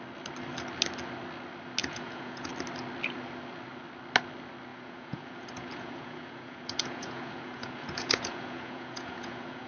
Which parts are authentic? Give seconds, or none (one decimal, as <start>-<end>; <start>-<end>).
0.0-1.8; 2.5-4.7